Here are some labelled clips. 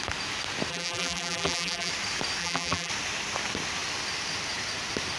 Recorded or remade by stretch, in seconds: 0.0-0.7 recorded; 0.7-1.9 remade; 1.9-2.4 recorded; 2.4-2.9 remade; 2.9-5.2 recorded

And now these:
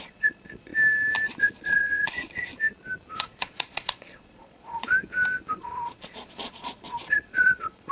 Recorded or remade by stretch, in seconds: 0.0-0.7 remade; 0.7-1.4 recorded; 1.4-2.5 remade; 2.5-3.1 recorded; 3.1-4.9 remade; 4.9-5.6 recorded; 5.6-7.9 remade

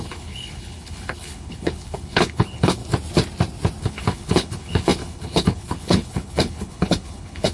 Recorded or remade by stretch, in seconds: 0.0-2.8 remade; 2.8-3.8 recorded; 3.8-7.5 remade

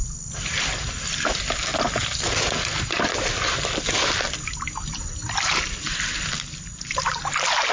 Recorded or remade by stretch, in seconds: 0.0-7.7 recorded

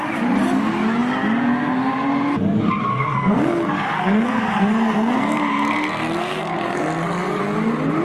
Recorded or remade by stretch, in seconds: 0.0-2.9 recorded; 2.9-7.4 remade; 7.4-8.0 recorded

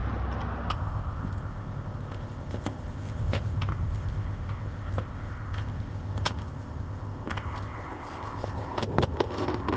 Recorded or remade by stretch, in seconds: 0.0-0.7 recorded; 0.7-9.8 remade

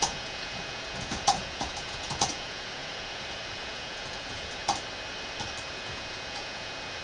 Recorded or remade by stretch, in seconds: 0.0-4.6 remade; 4.6-5.7 recorded; 5.7-7.0 remade

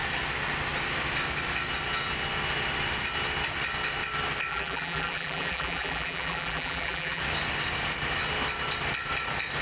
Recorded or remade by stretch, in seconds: 0.0-4.5 recorded; 4.5-7.2 remade; 7.2-9.6 recorded